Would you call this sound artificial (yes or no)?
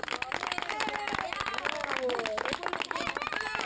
no